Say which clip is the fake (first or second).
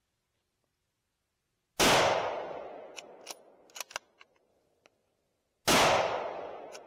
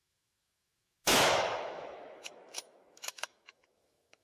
second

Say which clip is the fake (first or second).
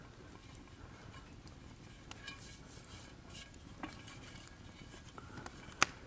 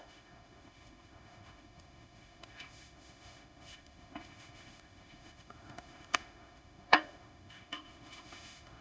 second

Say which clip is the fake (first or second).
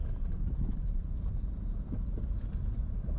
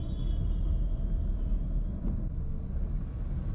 first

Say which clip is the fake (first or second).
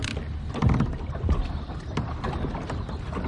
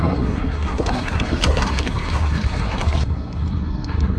second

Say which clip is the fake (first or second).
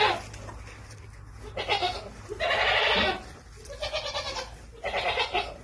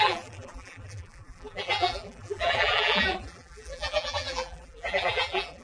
second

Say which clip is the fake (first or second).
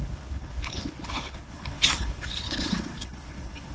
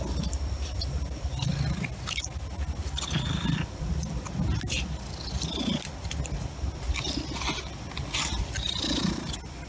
first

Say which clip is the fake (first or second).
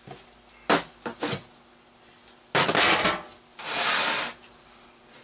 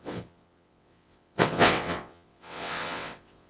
second